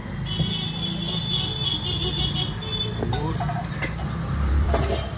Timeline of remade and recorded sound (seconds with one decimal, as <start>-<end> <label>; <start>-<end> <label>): 0.0-3.1 recorded; 3.1-5.2 remade